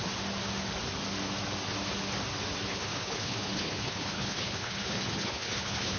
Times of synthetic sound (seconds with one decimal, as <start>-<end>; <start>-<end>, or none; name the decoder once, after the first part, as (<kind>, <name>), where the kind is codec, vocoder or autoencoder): 2.7-6.0 (codec, HILCodec)